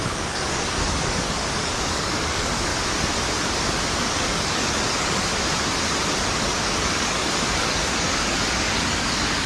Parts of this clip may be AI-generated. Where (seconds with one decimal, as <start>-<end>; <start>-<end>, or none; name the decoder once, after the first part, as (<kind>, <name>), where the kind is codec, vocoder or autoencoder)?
0.0-2.7 (codec, DAC); 4.0-5.3; 6.3-9.5